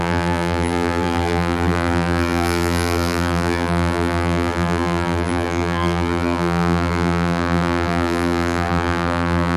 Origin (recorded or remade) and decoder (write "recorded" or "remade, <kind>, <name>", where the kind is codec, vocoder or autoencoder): remade, vocoder, BigVGAN v2